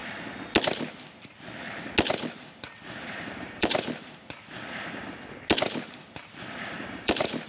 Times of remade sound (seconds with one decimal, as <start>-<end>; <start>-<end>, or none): 2.3-4.2; 5.8-7.5